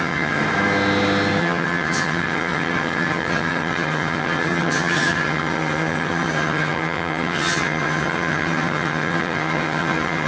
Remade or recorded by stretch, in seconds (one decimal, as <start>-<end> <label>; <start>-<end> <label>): 0.0-0.4 remade; 0.4-1.4 recorded; 1.4-10.3 remade